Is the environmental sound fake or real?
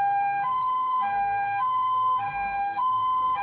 fake